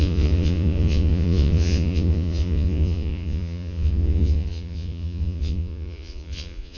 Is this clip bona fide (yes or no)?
no